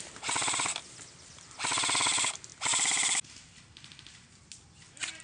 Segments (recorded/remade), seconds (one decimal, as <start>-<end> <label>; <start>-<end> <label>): 0.0-5.2 recorded